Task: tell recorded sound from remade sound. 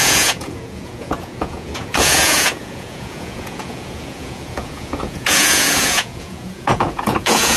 remade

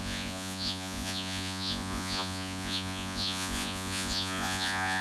remade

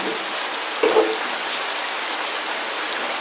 recorded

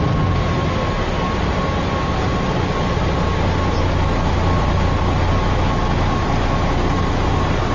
recorded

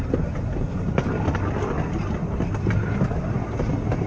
recorded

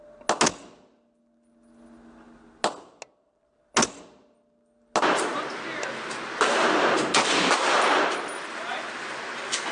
recorded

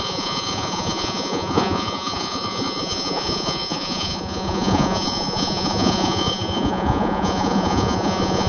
remade